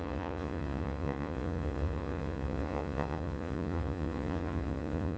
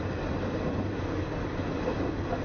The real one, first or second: second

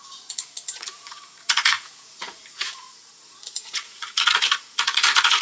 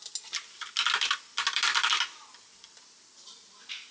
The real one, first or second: second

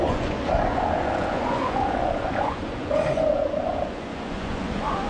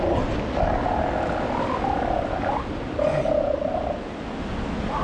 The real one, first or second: second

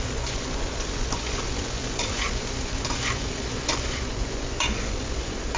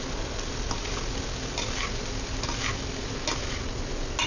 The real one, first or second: second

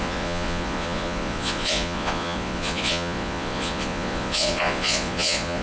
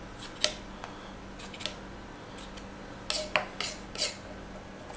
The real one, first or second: second